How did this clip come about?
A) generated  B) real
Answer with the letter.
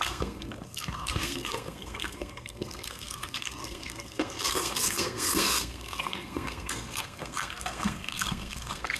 A